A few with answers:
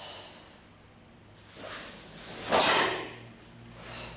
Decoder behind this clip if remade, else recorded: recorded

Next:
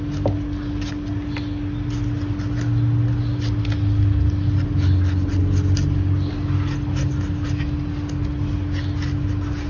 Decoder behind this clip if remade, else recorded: recorded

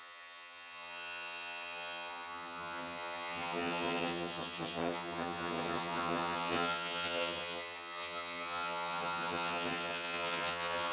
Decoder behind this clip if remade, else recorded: remade, vocoder, HiFi-GAN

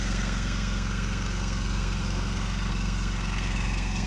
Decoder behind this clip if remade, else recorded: remade, codec, SNAC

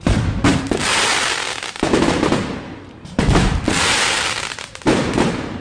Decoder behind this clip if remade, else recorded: recorded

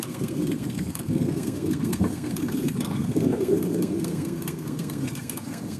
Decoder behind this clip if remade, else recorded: remade, codec, SNAC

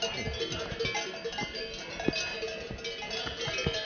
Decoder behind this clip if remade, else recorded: recorded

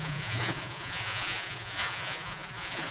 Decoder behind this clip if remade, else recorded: remade, vocoder, Vocos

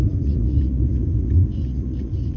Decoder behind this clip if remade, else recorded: remade, vocoder, Vocos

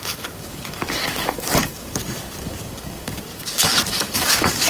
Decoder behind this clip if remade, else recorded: remade, codec, DAC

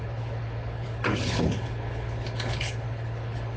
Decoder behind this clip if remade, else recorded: remade, codec, HILCodec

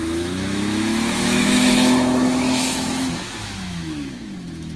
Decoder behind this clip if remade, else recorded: remade, autoencoder, DAC-VAE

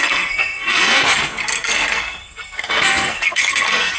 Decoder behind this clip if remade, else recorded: remade, codec, SNAC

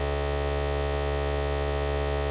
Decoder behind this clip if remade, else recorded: recorded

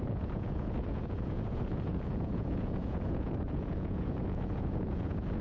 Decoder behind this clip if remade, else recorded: remade, vocoder, Vocos